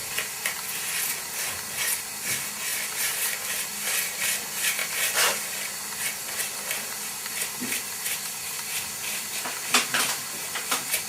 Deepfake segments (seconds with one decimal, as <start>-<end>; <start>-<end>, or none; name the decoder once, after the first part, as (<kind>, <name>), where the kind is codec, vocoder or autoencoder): 2.7-3.7 (vocoder, BigVGAN v2); 4.8-9.3